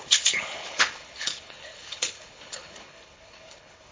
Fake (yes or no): yes